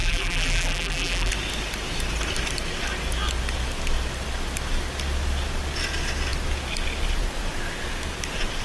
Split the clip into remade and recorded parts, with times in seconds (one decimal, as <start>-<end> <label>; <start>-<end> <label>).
0.0-1.3 remade; 1.3-8.6 recorded